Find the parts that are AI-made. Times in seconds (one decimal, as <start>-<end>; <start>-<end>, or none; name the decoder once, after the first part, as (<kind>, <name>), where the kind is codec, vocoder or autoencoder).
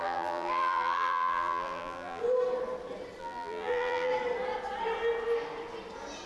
0.0-2.2 (vocoder, BigVGAN v2); 3.2-4.1